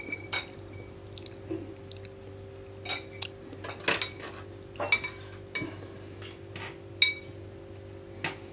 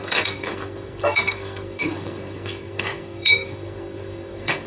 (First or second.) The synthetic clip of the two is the second